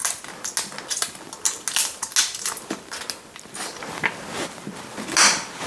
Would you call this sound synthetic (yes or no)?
no